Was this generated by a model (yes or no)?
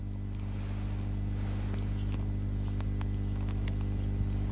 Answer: no